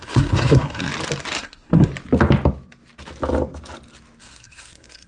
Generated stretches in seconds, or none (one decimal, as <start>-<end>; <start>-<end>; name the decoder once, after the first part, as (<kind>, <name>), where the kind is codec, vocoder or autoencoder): 0.0-0.9 (codec, SNAC); 1.4-1.9; 4.2-5.1